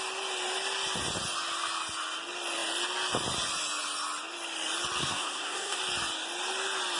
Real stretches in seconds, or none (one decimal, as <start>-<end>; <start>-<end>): 0.0-5.0; 5.8-7.0